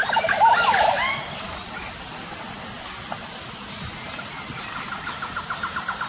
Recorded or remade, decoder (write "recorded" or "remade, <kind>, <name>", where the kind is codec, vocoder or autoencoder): remade, vocoder, BigVGAN v2